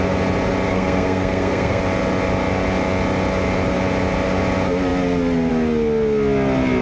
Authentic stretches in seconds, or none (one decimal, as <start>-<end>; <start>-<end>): 0.0-0.7; 1.8-6.8